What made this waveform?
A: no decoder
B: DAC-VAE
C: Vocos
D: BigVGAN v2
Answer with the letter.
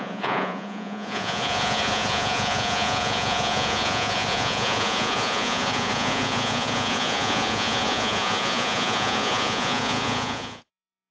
C